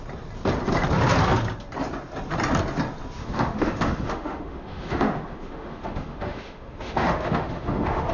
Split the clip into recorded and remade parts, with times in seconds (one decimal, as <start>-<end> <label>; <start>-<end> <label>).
0.0-3.2 recorded; 3.2-8.1 remade